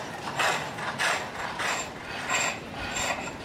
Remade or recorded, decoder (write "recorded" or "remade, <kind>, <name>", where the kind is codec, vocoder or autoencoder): recorded